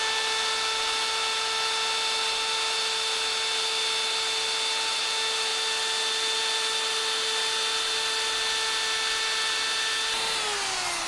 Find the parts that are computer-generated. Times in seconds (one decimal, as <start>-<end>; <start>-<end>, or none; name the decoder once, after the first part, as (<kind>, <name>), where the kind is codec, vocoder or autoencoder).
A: none